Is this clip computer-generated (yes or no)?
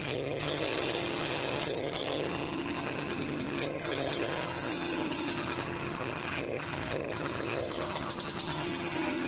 yes